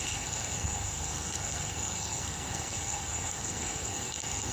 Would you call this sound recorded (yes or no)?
no